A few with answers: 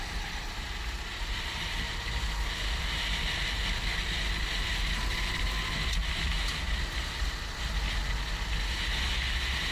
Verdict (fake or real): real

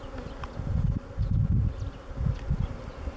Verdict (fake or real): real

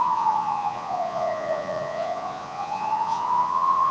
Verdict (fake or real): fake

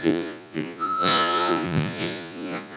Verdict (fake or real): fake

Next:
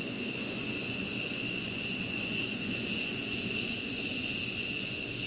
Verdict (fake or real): fake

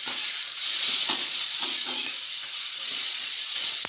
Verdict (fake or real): fake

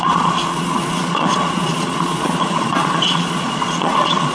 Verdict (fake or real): fake